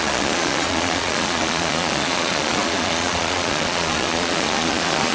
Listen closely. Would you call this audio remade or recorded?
remade